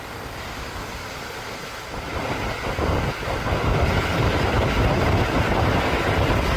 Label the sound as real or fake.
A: real